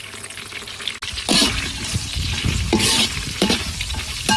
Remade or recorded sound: recorded